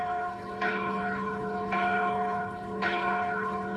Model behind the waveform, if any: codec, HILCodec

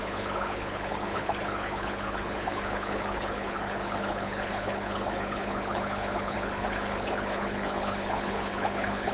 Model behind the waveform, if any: codec, HILCodec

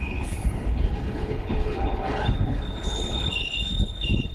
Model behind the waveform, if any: codec, HILCodec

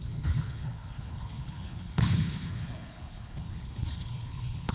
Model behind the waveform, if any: codec, HILCodec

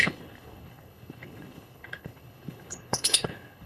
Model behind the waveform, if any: codec, HILCodec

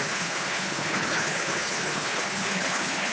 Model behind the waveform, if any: codec, HILCodec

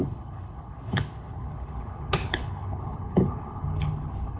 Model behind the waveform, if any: codec, HILCodec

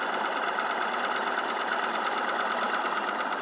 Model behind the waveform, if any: none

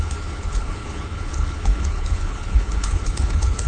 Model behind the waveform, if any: codec, HILCodec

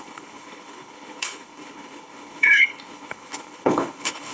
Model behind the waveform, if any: codec, HILCodec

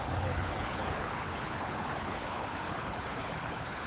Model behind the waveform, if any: codec, HILCodec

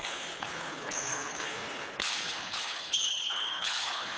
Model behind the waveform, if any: codec, HILCodec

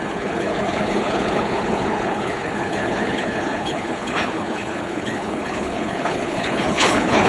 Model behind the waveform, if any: codec, HILCodec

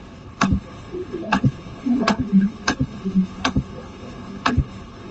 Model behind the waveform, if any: codec, HILCodec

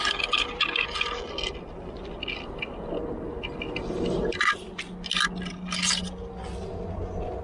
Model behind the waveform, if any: none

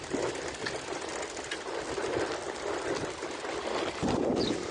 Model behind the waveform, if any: none